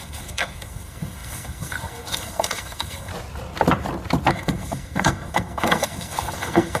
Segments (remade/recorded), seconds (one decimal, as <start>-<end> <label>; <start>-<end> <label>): 0.0-3.1 remade; 3.1-4.3 recorded; 4.3-6.8 remade